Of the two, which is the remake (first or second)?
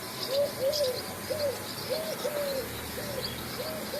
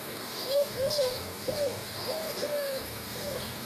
second